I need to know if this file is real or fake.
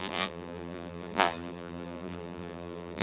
fake